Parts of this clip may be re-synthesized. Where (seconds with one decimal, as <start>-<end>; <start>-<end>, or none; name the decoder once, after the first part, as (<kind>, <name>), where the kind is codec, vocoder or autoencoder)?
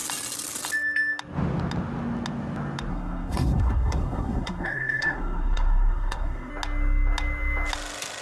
2.9-6.5 (codec, SNAC)